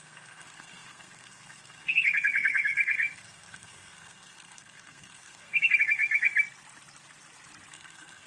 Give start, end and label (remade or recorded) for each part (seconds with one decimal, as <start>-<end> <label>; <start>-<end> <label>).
0.0-6.3 remade; 6.3-7.7 recorded; 7.7-8.3 remade